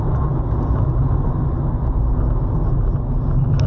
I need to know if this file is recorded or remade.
recorded